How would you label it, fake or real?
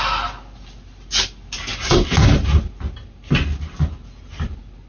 real